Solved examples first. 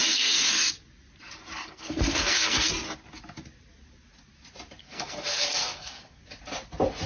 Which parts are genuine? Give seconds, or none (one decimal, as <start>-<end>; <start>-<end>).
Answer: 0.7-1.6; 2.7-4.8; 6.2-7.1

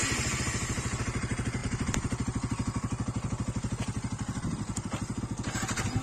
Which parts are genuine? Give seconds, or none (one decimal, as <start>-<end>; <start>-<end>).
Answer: 1.0-1.6; 5.2-6.0

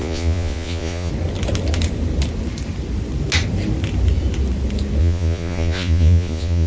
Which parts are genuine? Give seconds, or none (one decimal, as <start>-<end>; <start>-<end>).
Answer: 1.1-5.0

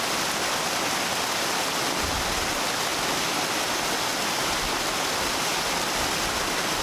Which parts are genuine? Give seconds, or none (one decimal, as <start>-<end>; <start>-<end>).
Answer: 0.0-6.8

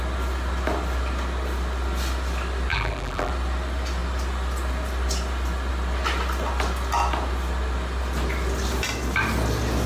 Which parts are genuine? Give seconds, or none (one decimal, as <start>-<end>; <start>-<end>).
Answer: 0.0-2.7; 3.3-9.9